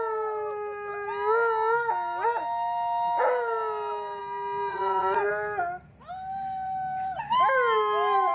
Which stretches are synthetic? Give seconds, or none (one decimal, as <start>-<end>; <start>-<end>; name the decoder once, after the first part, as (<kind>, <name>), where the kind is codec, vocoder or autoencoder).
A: 4.7-5.3 (vocoder, Vocos)